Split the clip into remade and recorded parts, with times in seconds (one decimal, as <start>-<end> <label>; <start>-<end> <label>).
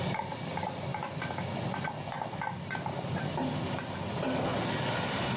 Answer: 0.0-5.4 recorded